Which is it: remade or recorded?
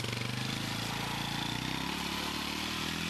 recorded